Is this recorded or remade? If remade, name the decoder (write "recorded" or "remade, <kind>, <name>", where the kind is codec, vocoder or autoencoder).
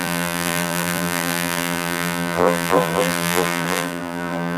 remade, vocoder, BigVGAN v2